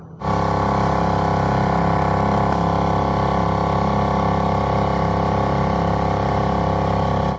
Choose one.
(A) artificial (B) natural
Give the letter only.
B